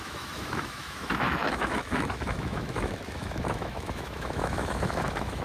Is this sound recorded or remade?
remade